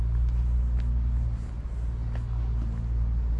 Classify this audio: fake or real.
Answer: real